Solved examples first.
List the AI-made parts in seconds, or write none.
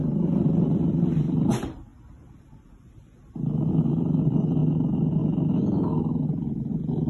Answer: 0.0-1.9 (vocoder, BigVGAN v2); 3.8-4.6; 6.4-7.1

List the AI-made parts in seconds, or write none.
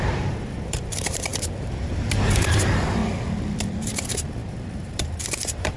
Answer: 0.0-3.0 (vocoder, BigVGAN v2); 4.0-5.8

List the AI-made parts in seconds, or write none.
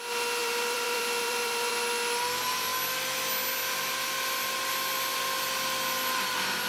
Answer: 0.4-1.7 (vocoder, BigVGAN v2)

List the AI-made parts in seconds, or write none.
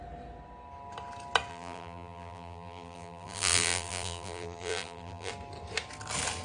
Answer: 1.5-5.3 (vocoder, BigVGAN v2)